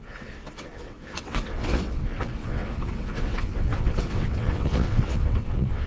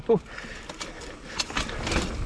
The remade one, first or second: first